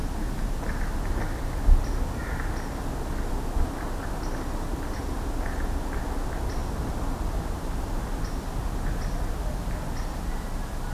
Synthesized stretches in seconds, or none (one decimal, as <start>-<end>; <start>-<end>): none